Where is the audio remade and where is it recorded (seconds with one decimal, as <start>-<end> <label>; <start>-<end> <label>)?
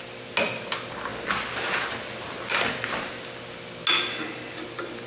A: 0.0-5.1 recorded